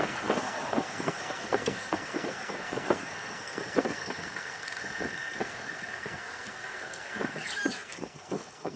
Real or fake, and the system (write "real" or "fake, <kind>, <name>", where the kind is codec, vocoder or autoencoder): fake, codec, SNAC